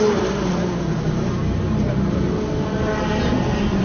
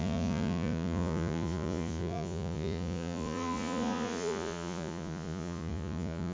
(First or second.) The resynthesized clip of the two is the second